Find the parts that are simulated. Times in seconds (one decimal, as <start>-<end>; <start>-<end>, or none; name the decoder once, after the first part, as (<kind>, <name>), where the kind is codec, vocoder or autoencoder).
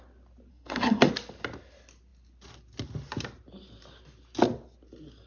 0.5-1.1 (codec, SNAC)